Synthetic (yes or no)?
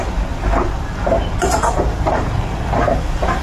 yes